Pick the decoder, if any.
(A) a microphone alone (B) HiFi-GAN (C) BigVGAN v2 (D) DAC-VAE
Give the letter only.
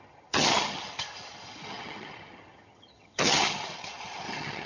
B